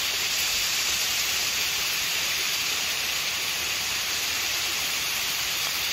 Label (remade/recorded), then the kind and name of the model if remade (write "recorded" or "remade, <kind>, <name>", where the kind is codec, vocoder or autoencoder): remade, vocoder, BigVGAN v2